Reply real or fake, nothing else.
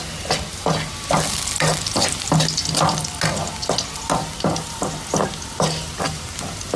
real